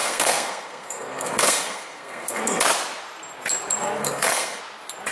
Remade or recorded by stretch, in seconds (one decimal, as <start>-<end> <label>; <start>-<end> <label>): 0.0-2.6 remade; 2.6-4.0 recorded; 4.0-4.6 remade; 4.6-5.1 recorded